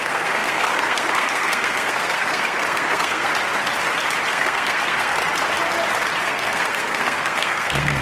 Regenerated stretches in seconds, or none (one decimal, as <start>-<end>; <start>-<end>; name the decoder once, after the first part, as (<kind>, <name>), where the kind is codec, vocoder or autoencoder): 0.0-3.3 (codec, SNAC); 4.3-5.2; 6.2-8.0